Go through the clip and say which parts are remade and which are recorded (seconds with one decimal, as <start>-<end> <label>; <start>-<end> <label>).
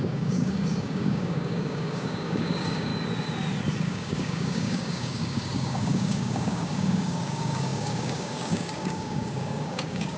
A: 0.0-2.9 remade; 2.9-3.8 recorded; 3.8-10.2 remade